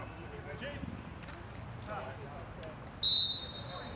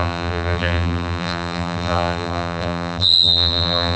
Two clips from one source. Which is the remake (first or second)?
second